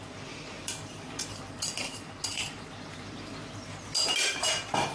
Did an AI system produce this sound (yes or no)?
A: yes